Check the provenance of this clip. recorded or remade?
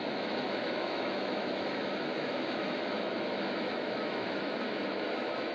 remade